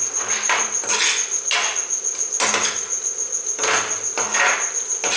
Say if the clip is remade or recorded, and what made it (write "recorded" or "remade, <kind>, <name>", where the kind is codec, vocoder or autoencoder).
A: recorded